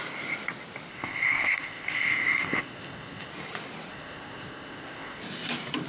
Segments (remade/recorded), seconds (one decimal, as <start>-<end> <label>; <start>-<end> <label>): 0.0-0.9 recorded; 0.9-3.3 remade; 3.3-3.9 recorded; 3.9-5.2 remade; 5.2-5.9 recorded

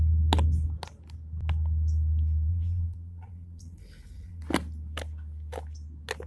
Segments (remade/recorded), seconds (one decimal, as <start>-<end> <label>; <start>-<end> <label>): 0.0-2.5 recorded; 2.5-4.4 remade; 4.4-6.3 recorded

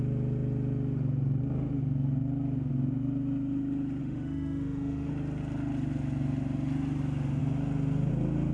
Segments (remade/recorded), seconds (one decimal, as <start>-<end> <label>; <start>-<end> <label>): 0.0-4.0 recorded; 4.0-5.1 remade; 5.1-8.5 recorded

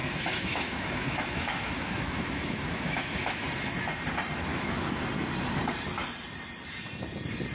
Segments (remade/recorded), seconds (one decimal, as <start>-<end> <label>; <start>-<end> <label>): 0.0-3.5 remade; 3.5-4.5 recorded; 4.5-5.0 remade; 5.0-7.5 recorded